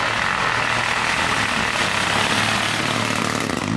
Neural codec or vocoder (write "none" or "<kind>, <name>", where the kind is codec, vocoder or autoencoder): none